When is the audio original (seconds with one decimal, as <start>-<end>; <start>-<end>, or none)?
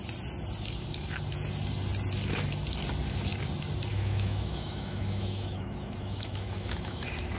0.0-3.9; 7.0-7.4